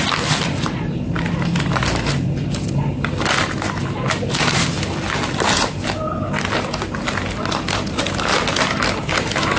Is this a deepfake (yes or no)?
no